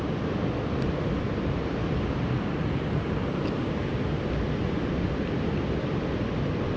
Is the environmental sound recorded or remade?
remade